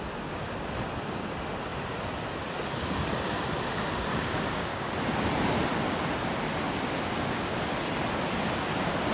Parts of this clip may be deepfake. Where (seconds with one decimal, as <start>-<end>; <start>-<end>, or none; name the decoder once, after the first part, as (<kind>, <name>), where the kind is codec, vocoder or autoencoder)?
4.1-4.9 (codec, DAC)